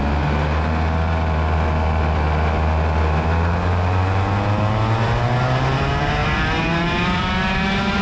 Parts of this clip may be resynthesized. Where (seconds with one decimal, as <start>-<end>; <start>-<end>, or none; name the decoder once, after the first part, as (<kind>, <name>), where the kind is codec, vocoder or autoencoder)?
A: none